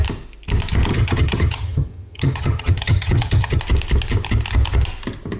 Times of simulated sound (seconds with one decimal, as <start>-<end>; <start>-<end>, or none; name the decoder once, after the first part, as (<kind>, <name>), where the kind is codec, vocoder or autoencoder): 0.9-3.6 (vocoder, HiFi-GAN)